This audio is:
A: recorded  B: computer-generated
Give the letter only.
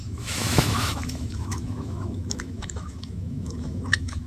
B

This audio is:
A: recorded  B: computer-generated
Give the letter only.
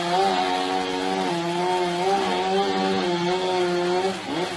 A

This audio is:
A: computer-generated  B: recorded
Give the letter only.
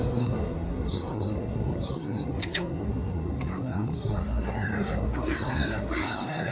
A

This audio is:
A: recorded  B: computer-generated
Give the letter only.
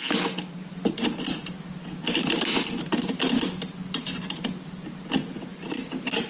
A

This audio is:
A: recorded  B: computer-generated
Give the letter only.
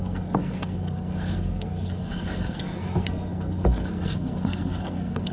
B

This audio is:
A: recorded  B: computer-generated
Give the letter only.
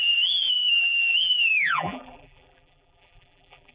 B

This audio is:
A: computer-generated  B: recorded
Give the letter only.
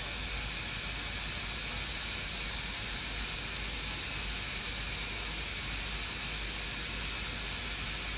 B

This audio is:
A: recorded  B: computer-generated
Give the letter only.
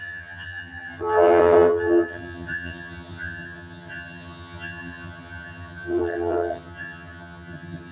B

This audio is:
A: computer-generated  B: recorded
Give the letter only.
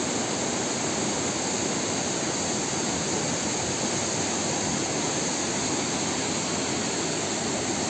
B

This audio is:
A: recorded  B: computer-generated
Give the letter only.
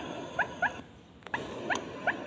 A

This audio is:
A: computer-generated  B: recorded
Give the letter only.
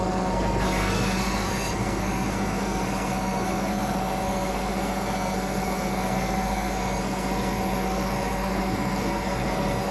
A